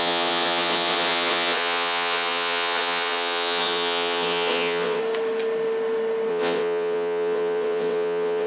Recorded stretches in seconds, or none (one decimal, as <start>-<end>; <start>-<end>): 5.0-6.3